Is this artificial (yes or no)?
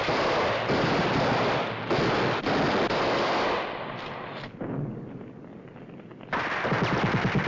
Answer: no